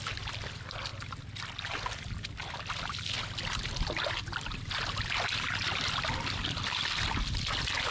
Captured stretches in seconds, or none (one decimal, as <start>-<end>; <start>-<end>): 0.0-7.9